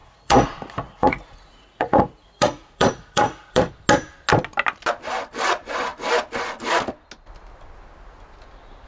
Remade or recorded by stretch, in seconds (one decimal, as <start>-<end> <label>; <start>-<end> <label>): 0.0-3.7 remade; 3.7-8.9 recorded